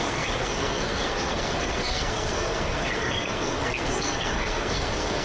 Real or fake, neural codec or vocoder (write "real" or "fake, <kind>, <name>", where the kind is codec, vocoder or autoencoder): fake, codec, SNAC